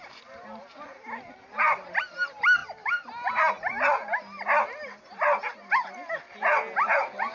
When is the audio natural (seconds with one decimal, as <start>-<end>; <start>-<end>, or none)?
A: 0.0-7.3